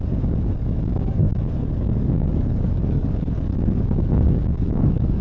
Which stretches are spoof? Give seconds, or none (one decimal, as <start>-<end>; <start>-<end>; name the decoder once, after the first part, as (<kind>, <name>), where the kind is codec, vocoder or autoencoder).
0.0-5.2 (codec, DAC)